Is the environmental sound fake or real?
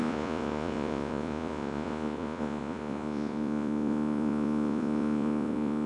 fake